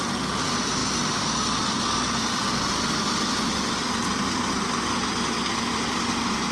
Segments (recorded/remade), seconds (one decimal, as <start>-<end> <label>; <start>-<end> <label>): 0.0-6.5 recorded